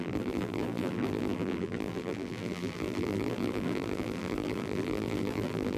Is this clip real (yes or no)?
no